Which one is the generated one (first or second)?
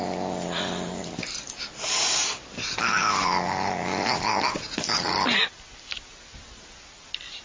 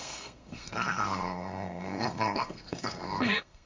second